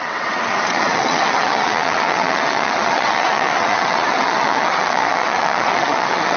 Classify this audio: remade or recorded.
remade